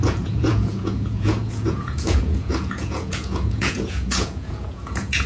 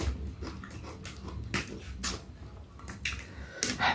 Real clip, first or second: second